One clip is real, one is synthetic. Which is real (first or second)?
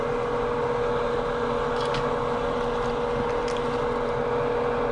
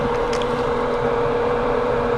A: first